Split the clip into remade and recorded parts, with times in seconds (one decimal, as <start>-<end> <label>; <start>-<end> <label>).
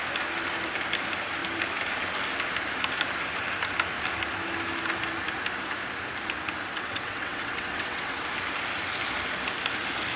0.0-6.7 recorded; 6.7-8.2 remade; 8.2-10.2 recorded